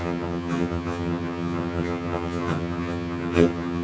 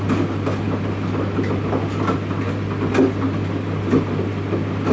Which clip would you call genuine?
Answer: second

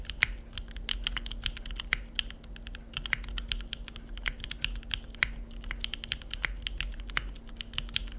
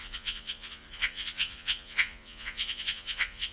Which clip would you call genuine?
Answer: first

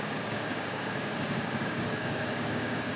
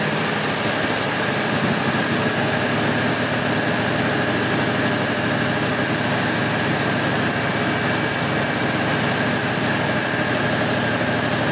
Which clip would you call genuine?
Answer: second